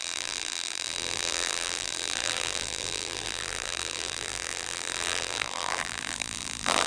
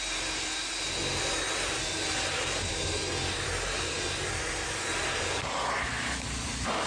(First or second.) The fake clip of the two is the first